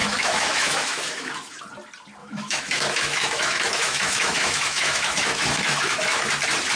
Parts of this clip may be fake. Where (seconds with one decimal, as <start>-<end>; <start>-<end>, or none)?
0.0-1.6; 2.2-6.3